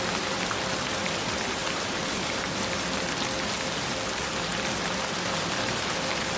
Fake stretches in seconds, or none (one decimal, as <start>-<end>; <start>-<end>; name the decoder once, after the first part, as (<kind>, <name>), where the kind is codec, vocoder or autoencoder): 1.6-2.6 (vocoder, BigVGAN v2)